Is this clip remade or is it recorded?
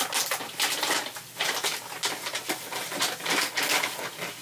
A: recorded